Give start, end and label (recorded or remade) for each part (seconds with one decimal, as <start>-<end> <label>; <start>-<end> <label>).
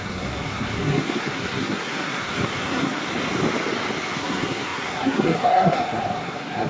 0.0-3.1 remade; 3.1-4.2 recorded; 4.2-6.7 remade